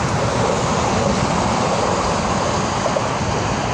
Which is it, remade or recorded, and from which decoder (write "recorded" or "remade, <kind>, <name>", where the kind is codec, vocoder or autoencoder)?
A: recorded